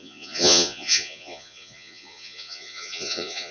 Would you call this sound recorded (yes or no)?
no